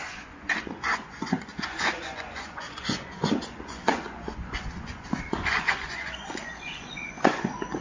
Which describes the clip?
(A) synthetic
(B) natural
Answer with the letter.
A